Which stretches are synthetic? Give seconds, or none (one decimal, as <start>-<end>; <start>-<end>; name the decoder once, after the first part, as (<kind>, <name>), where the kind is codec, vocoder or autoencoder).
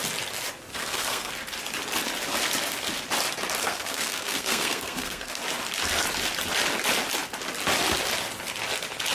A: 0.7-1.3 (codec, SNAC); 3.6-5.4